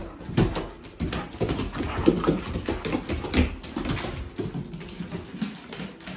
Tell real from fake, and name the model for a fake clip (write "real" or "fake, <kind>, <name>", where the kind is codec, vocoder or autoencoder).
real